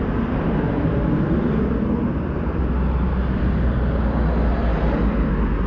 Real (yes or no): yes